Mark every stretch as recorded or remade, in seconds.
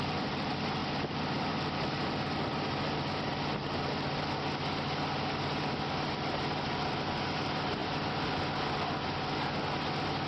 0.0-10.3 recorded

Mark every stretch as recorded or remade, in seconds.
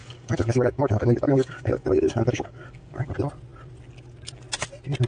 0.0-3.1 remade; 3.1-5.1 recorded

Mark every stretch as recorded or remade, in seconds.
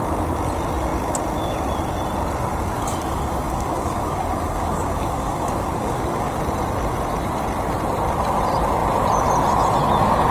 0.0-2.5 recorded; 2.5-6.4 remade; 6.4-10.3 recorded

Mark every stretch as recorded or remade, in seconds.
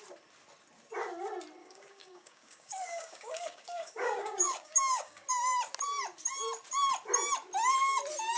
0.0-1.6 recorded; 1.6-5.3 remade; 5.3-8.4 recorded